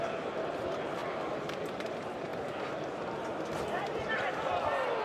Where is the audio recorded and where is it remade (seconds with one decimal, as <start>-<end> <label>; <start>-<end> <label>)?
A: 0.0-2.3 remade; 2.3-3.6 recorded; 3.6-5.0 remade